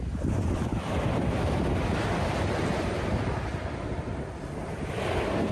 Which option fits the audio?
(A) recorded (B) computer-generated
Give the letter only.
A